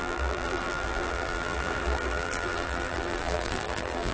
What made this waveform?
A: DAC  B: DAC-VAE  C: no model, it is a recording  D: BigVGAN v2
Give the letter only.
D